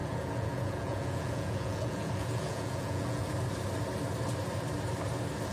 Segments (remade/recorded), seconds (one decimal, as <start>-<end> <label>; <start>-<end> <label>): 0.0-3.3 remade; 3.3-5.5 recorded